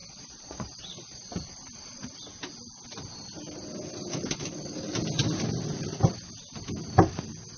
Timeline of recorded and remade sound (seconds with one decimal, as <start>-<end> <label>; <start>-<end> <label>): 0.0-1.3 remade; 1.3-7.6 recorded

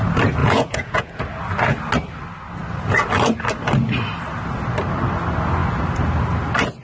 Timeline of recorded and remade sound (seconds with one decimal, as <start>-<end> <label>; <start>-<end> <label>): 0.0-0.4 recorded; 0.4-1.2 remade; 1.2-6.8 recorded

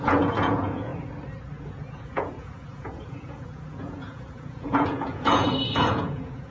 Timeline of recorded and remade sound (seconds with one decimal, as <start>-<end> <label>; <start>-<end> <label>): 0.0-0.9 remade; 0.9-1.6 recorded; 1.6-6.5 remade

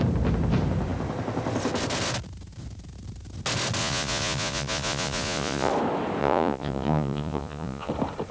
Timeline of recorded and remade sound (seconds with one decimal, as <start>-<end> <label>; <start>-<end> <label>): 0.0-3.8 recorded; 3.8-5.7 remade; 5.7-6.2 recorded; 6.2-7.9 remade; 7.9-8.3 recorded

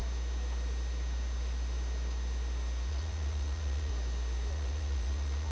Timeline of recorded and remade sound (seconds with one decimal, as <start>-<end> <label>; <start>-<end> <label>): 0.0-2.9 recorded; 2.9-3.9 remade; 3.9-4.5 recorded; 4.5-5.5 remade

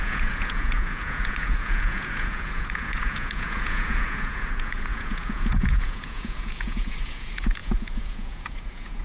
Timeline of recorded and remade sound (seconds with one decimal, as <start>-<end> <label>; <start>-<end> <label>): 0.0-9.0 remade